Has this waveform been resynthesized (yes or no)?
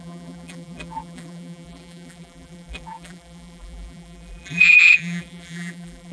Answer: yes